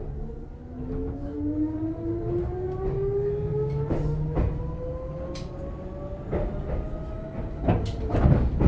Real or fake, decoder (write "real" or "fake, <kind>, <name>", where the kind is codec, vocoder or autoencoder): real